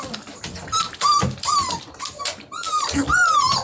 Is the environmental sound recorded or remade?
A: recorded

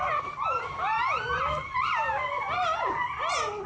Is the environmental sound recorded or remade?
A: remade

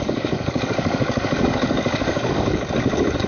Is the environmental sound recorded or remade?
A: remade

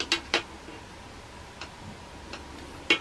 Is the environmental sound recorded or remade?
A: recorded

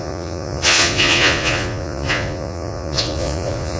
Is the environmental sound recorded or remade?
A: remade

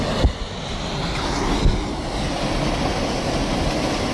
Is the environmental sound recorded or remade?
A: recorded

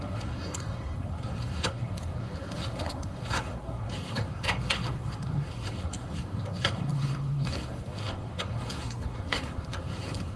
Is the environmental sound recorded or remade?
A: remade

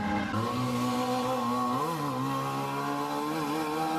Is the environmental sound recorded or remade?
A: recorded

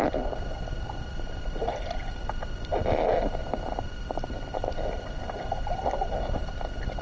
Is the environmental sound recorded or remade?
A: recorded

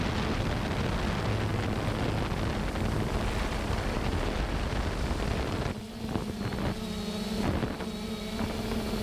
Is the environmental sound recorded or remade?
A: recorded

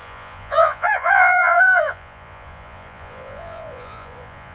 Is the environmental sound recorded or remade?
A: remade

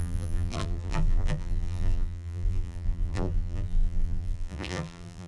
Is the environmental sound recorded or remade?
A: remade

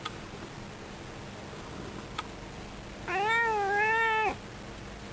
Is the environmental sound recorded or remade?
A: recorded